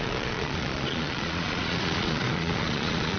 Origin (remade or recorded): remade